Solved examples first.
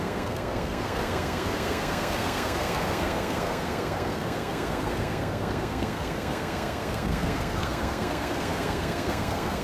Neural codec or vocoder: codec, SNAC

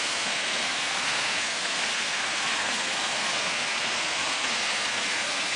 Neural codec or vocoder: codec, SNAC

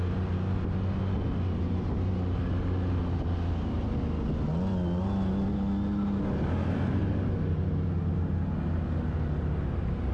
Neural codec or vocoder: none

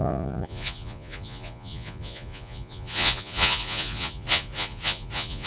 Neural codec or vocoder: vocoder, Vocos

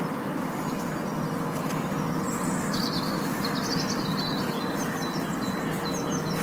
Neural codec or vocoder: none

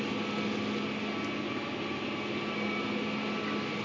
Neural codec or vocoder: none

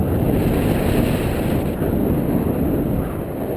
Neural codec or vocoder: none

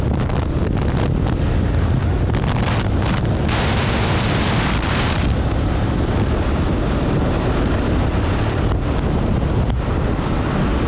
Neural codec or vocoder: none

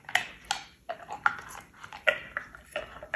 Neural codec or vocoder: none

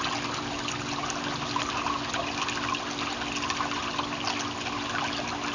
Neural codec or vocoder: none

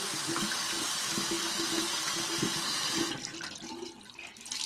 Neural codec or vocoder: none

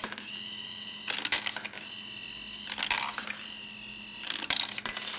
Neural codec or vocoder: none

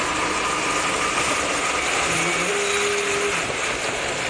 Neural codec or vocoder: none